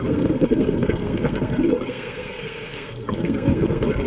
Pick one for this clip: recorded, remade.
remade